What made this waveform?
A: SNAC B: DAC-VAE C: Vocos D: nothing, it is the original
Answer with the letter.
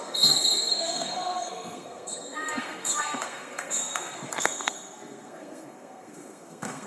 A